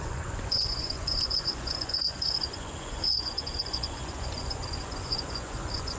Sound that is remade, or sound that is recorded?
remade